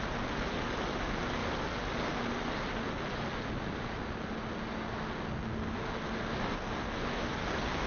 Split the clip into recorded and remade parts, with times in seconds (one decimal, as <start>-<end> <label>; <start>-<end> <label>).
0.0-7.9 recorded